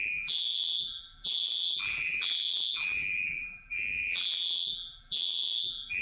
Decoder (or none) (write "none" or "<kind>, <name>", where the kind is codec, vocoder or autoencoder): vocoder, BigVGAN v2